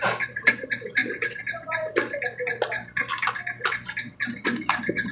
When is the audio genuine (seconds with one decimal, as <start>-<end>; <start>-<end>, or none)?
1.0-4.1